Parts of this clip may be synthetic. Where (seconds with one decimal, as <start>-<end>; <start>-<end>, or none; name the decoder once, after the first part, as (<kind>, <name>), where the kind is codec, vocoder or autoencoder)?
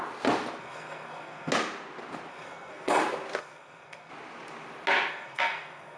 0.6-1.5 (codec, SNAC); 2.3-3.0; 3.4-4.1; 5.1-6.0